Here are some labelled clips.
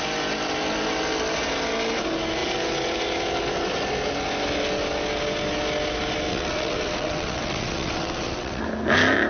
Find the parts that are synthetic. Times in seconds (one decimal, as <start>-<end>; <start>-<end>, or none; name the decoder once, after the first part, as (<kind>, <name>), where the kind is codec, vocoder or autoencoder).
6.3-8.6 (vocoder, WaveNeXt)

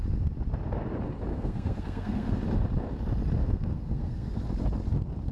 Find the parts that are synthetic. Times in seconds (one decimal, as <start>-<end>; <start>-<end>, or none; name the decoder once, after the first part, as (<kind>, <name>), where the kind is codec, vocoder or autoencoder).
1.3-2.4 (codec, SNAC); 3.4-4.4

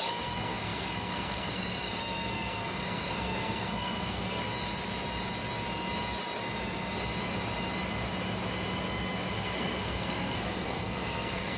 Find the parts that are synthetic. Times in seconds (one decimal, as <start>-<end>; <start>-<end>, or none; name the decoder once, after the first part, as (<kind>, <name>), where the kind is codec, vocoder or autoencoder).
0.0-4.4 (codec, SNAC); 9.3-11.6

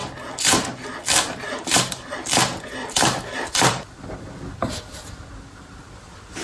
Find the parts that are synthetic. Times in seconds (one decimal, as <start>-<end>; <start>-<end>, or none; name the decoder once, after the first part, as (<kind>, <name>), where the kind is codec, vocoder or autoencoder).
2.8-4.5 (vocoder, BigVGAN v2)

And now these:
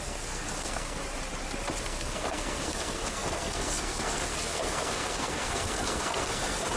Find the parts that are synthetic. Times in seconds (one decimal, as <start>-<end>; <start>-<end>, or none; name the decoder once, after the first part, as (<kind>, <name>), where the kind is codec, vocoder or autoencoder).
0.0-1.0 (codec, SNAC); 1.8-6.8

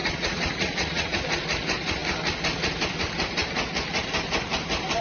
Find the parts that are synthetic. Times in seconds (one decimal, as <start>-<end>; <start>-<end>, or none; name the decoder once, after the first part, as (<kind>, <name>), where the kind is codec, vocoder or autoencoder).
0.0-1.1 (vocoder, Vocos)

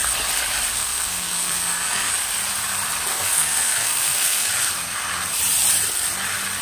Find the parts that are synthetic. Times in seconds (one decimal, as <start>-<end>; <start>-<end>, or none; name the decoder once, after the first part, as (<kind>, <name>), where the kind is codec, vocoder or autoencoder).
0.8-2.1 (codec, SNAC); 3.1-4.5